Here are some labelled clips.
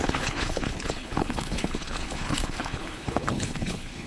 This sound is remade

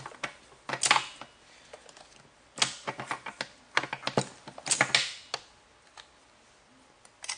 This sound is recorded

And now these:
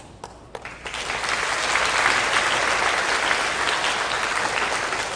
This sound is recorded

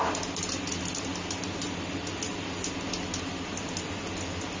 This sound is recorded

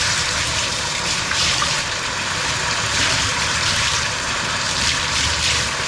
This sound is remade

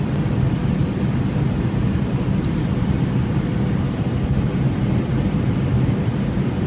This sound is recorded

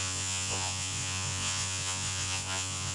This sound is remade